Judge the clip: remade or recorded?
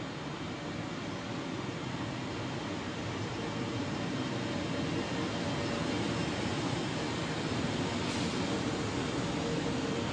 recorded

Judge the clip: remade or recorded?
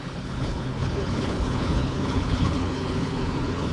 remade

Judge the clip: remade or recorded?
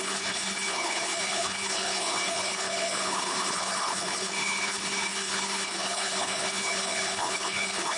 remade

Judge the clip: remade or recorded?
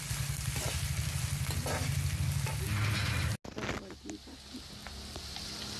recorded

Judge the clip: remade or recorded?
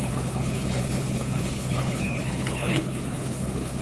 remade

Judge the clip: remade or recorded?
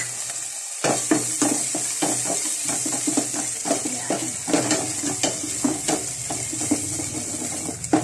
recorded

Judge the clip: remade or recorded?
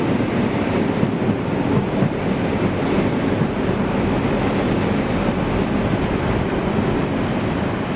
recorded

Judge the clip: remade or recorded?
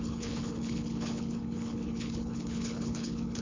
remade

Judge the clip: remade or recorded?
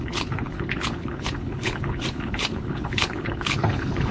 remade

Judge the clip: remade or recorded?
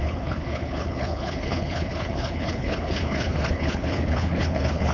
remade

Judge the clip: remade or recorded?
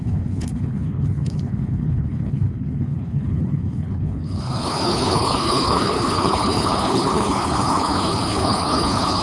remade